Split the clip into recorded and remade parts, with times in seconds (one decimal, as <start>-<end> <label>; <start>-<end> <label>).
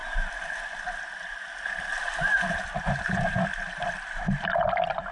0.0-2.1 recorded; 2.1-5.1 remade